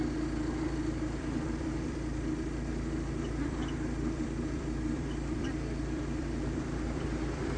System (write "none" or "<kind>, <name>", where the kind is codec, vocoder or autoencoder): vocoder, BigVGAN v2